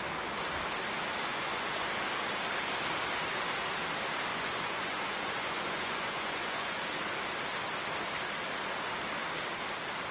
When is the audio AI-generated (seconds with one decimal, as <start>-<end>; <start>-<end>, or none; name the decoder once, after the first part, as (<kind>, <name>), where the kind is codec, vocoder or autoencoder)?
1.3-1.9 (vocoder, Vocos); 4.3-6.8